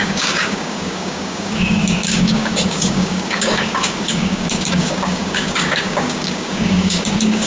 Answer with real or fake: fake